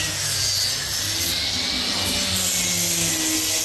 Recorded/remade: recorded